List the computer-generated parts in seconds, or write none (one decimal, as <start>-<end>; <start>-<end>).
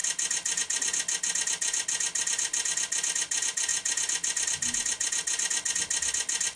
none